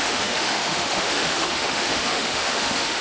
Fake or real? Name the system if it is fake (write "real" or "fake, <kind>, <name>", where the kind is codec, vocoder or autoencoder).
fake, autoencoder, DAC-VAE